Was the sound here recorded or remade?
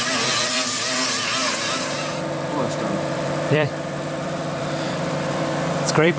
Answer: remade